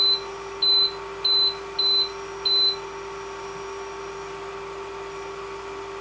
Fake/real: real